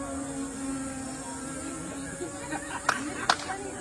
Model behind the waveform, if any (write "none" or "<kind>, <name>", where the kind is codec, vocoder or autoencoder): none